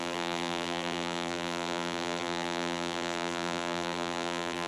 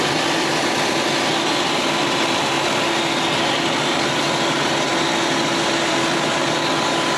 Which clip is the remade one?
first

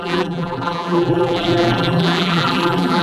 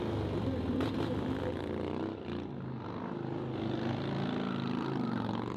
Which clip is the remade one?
first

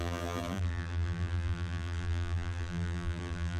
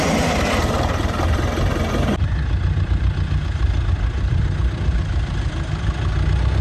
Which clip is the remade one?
first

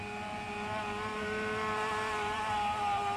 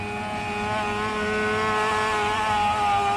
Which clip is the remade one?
first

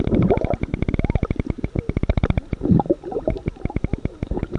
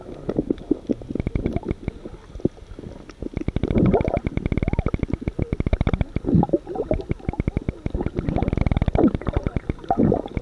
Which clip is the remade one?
first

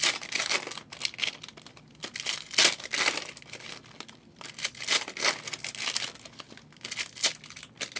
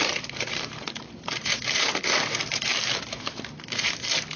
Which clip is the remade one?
second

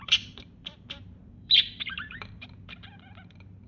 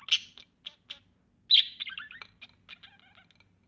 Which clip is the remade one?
first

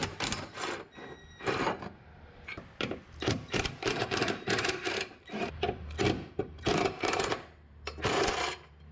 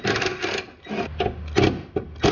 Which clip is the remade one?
first